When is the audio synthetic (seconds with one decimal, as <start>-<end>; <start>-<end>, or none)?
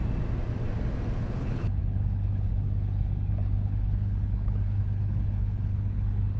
1.2-6.4